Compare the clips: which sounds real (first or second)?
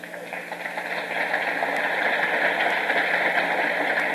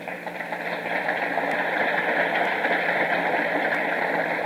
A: first